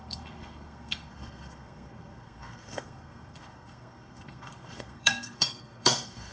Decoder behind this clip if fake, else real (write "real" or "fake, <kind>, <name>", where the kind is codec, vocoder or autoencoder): fake, codec, SNAC